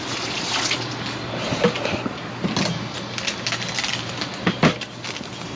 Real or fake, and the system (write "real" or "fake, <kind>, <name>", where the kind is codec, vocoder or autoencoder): real